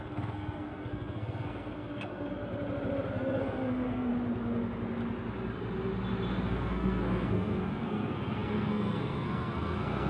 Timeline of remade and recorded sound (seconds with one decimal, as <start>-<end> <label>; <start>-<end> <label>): 0.0-2.4 remade; 2.4-3.1 recorded; 3.1-4.1 remade; 4.1-6.3 recorded; 6.3-10.1 remade